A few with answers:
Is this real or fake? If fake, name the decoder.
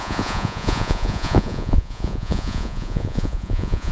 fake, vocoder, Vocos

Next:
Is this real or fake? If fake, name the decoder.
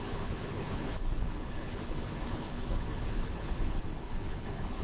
fake, codec, HILCodec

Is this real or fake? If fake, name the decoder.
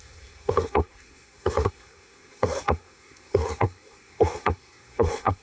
fake, codec, SNAC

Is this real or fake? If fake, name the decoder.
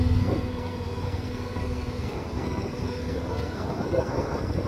fake, codec, SNAC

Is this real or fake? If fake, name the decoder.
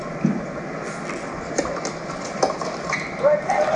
real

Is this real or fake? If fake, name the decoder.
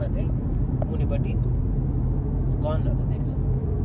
real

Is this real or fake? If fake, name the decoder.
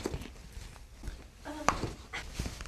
real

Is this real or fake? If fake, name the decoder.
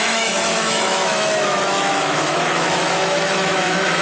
fake, autoencoder, DAC-VAE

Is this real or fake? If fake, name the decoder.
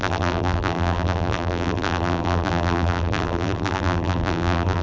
fake, vocoder, BigVGAN v2